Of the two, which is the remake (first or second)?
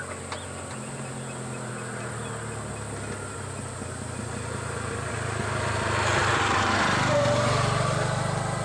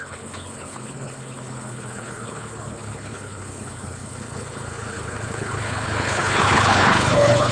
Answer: second